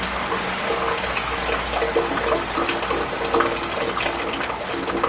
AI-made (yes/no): no